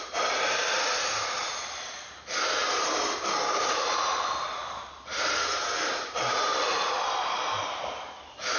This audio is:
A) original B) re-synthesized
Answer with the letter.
A